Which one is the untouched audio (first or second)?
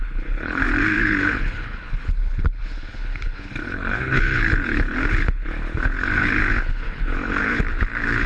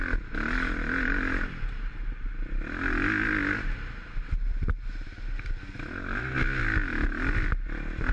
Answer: second